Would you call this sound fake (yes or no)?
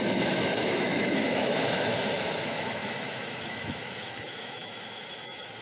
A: yes